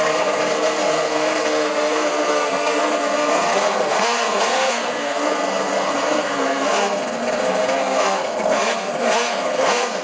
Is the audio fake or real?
fake